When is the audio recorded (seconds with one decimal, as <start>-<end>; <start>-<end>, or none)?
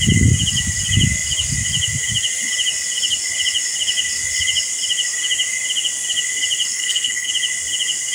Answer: 0.0-6.7; 7.3-8.1